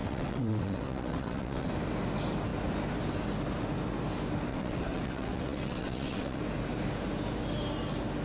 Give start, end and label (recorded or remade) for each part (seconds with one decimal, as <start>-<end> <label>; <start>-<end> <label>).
0.0-1.7 remade; 1.7-4.5 recorded; 4.5-6.4 remade; 6.4-8.2 recorded